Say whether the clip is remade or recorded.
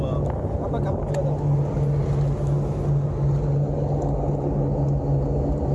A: recorded